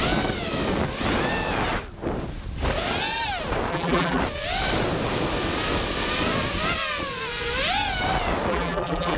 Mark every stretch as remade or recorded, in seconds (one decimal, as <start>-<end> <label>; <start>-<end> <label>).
0.0-3.7 recorded; 3.7-4.2 remade; 4.2-8.5 recorded; 8.5-9.2 remade